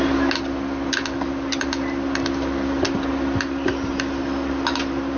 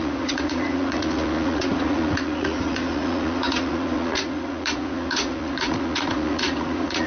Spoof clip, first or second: second